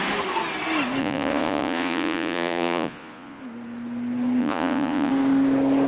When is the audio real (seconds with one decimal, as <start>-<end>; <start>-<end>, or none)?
0.0-1.0; 3.4-4.4; 5.1-5.9